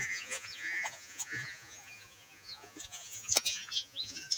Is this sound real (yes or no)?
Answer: no